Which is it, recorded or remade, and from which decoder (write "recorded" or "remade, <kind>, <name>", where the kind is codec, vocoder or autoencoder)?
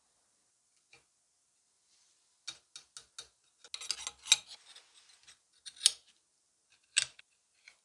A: recorded